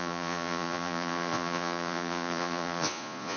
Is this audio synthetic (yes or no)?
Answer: yes